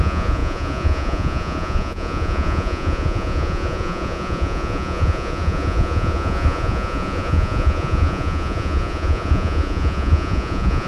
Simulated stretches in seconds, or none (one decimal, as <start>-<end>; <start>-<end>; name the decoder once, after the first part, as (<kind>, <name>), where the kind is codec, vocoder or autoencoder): 0.0-10.9 (vocoder, Vocos)